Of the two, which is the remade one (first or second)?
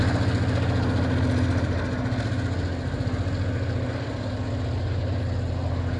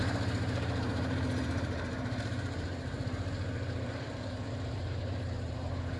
second